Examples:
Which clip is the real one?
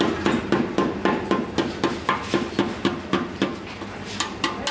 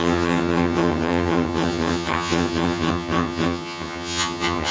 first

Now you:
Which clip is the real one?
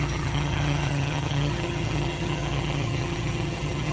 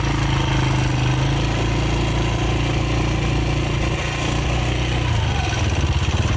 second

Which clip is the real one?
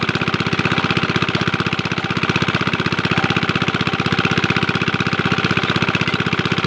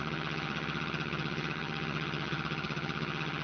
first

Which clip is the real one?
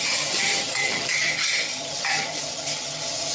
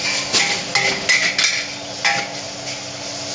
second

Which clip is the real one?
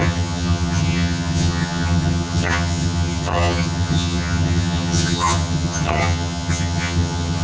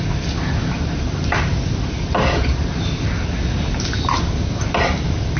second